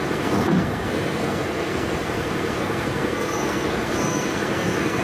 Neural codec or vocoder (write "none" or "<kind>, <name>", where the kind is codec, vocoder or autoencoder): codec, SNAC